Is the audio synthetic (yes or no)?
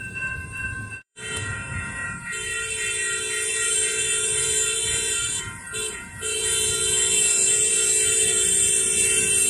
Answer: yes